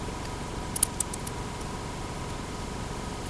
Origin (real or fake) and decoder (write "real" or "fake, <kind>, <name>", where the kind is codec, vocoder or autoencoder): real